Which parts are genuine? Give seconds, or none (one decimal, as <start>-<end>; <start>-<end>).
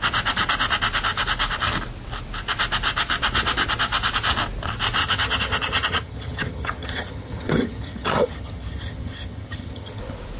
0.0-5.0; 10.0-10.4